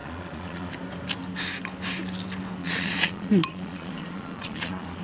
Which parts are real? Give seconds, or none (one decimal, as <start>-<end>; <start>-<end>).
0.7-2.6

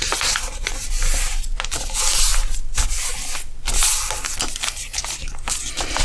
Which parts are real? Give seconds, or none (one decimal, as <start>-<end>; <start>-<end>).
0.0-6.0

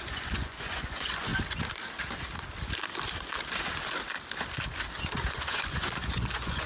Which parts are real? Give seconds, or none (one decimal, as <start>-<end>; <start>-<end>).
1.3-5.3

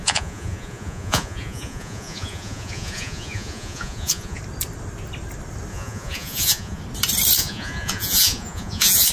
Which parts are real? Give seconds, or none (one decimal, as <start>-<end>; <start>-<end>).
4.4-5.7; 6.8-7.4

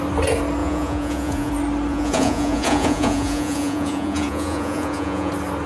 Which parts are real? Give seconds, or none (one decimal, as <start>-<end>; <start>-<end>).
0.0-0.6; 1.5-1.9; 5.3-5.7

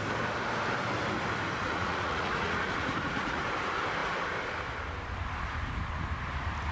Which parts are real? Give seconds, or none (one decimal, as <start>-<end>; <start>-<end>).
0.0-1.6; 3.4-6.7